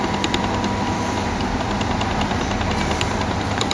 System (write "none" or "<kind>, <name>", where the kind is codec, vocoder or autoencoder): vocoder, BigVGAN v2